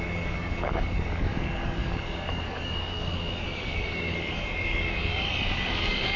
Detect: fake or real fake